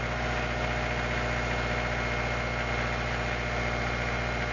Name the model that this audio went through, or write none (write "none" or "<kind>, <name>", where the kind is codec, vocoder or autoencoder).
none